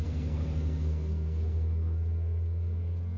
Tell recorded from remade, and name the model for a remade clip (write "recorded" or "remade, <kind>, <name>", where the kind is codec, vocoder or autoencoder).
remade, codec, SNAC